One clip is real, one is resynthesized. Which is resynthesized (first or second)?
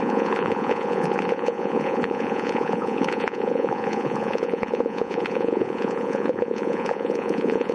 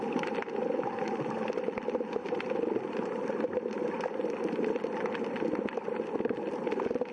first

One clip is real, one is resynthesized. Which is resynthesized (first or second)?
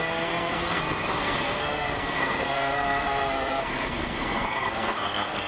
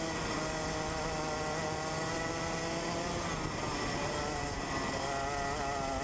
first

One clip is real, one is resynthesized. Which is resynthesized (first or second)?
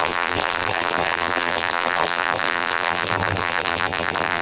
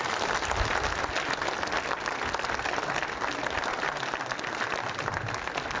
first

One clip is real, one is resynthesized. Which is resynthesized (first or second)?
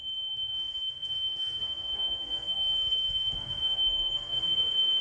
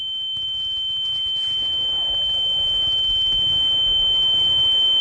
first